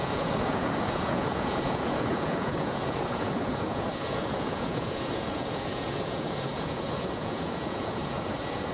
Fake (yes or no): yes